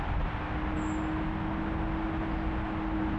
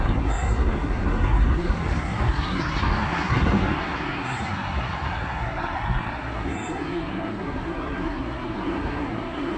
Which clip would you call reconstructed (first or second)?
second